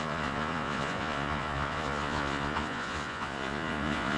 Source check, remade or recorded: remade